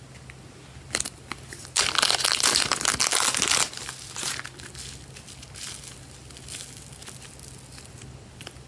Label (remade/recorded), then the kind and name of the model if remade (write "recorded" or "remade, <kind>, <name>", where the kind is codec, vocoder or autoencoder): recorded